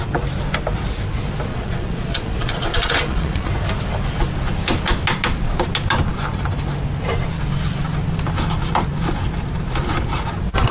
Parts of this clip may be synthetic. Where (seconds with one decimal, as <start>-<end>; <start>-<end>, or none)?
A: 1.5-3.5